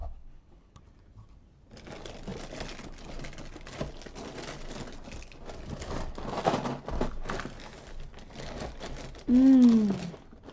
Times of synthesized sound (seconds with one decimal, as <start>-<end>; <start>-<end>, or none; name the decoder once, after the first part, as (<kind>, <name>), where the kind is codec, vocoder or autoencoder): 0.0-0.8 (codec, HILCodec)